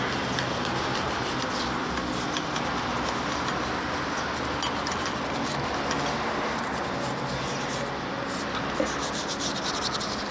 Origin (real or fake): real